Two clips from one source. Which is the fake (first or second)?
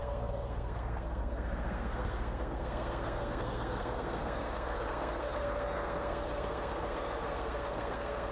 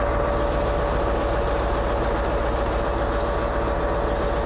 first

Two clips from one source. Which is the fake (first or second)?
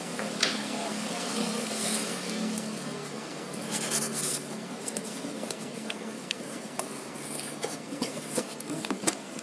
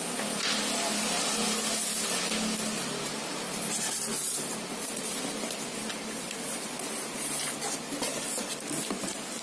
first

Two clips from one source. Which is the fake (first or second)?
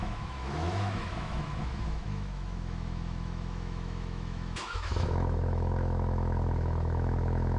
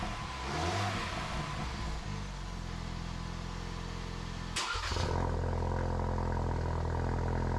first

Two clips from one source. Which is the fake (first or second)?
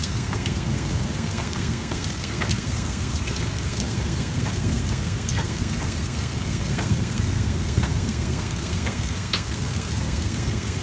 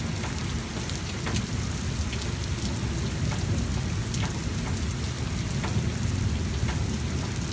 first